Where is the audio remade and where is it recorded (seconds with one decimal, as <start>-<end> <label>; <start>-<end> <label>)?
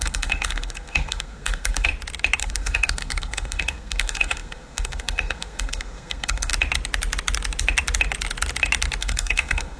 0.0-1.9 remade; 1.9-2.4 recorded; 2.4-6.5 remade; 6.5-9.0 recorded; 9.0-9.8 remade